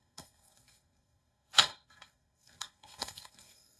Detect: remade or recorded remade